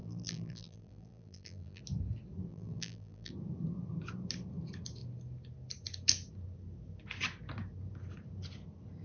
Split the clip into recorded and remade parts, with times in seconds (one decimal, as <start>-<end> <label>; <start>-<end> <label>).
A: 0.0-1.8 remade; 1.8-2.5 recorded; 2.5-3.3 remade; 3.3-9.0 recorded

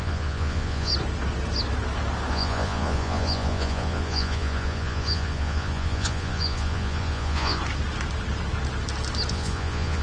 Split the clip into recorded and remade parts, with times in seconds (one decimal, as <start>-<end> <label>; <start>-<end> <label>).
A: 0.0-0.9 remade; 0.9-2.3 recorded; 2.3-7.6 remade; 7.6-9.3 recorded; 9.3-10.0 remade

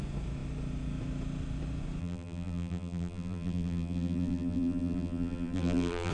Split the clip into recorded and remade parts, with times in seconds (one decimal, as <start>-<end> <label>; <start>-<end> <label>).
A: 0.0-2.0 recorded; 2.0-6.1 remade

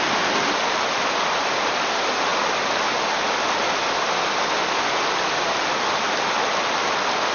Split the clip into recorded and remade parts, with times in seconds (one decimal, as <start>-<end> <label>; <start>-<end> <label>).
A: 0.0-7.3 recorded